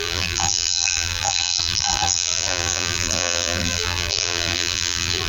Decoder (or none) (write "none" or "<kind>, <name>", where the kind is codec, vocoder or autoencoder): vocoder, BigVGAN v2